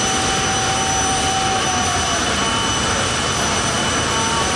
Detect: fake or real real